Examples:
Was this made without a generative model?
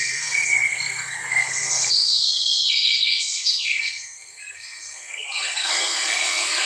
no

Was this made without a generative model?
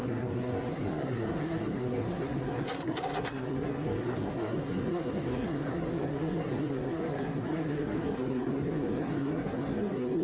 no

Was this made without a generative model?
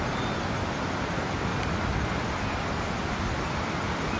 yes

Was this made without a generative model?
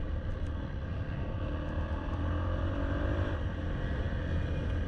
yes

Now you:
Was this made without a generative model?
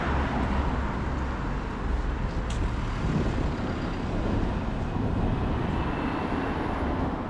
yes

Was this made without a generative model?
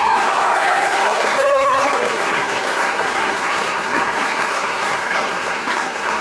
no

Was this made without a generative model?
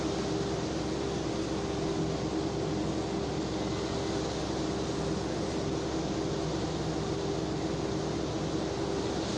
yes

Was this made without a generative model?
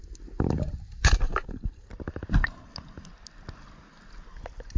yes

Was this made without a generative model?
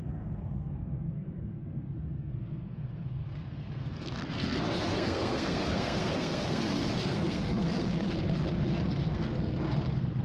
no